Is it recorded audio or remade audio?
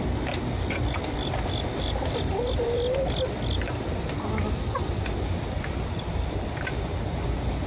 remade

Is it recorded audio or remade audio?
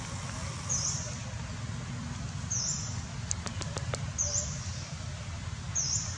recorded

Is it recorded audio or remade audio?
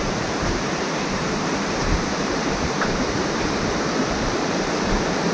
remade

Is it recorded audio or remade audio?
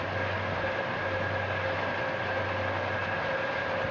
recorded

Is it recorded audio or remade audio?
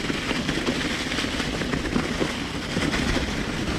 recorded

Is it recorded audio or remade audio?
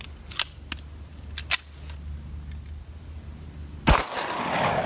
recorded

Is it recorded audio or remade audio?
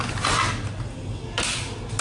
recorded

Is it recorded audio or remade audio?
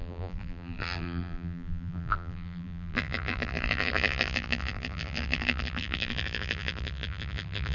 remade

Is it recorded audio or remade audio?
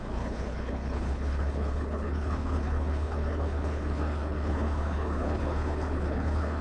remade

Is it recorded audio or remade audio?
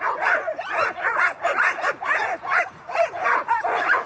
remade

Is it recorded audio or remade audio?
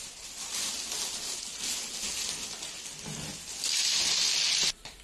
recorded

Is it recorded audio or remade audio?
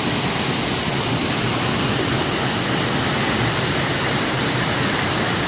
recorded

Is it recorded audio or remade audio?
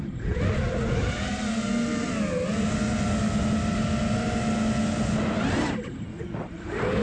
recorded